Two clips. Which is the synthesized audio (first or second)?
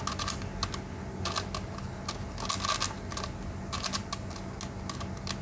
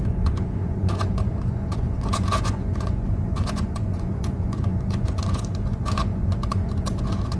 second